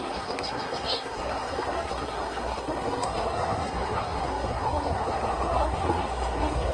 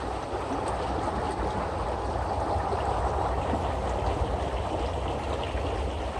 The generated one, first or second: first